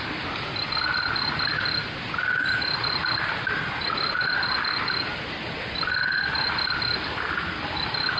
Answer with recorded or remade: recorded